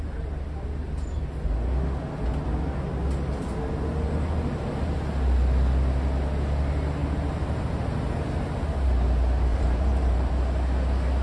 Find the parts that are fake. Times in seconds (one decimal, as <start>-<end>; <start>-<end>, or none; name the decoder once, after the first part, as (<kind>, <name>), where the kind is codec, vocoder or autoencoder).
9.5-10.3 (vocoder, BigVGAN v2)

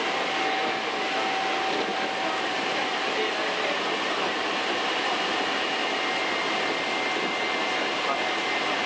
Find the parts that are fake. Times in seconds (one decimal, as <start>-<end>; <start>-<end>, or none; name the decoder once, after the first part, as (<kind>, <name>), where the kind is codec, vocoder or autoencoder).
1.9-5.1 (vocoder, BigVGAN v2)

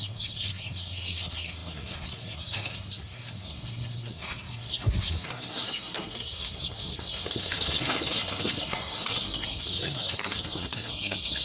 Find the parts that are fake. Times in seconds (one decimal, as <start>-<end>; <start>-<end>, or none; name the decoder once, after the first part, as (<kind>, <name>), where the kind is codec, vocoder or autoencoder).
0.0-11.4 (codec, SNAC)

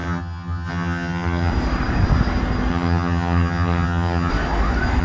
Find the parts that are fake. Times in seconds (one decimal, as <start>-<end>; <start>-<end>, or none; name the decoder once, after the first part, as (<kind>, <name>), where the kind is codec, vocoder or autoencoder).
0.0-1.5 (vocoder, HiFi-GAN); 2.7-4.3

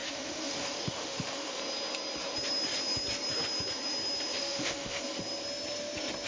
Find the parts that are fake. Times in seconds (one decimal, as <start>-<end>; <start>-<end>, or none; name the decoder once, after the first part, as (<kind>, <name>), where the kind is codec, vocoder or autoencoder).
0.0-1.6 (autoencoder, DAC-VAE); 4.4-5.0